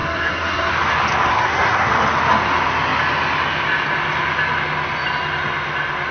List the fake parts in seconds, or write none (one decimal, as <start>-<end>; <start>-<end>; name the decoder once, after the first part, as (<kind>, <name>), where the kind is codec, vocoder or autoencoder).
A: 0.0-0.7 (codec, SNAC); 1.3-1.9